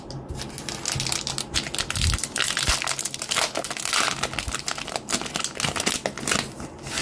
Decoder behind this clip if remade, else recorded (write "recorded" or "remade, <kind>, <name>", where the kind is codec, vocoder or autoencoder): recorded